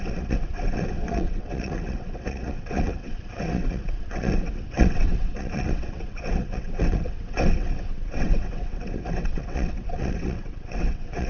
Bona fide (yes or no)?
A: no